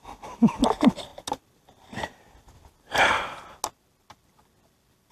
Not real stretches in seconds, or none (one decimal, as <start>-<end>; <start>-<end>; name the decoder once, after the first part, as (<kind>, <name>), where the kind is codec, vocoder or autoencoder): none